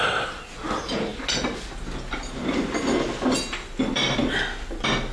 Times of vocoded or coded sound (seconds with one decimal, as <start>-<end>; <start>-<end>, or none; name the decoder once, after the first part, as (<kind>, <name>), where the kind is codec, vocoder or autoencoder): none